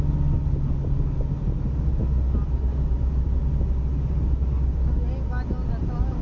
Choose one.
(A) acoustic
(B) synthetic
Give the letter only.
A